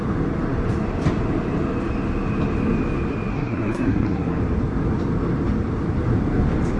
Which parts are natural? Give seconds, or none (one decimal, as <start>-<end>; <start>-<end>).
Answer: 0.0-3.3; 4.4-6.8